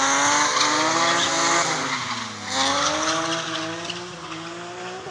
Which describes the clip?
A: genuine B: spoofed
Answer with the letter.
A